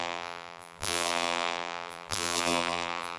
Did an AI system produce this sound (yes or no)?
yes